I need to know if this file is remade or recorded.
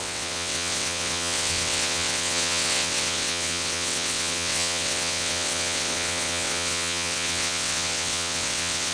remade